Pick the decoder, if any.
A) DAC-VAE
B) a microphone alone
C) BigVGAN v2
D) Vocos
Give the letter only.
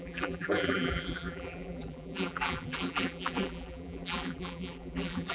C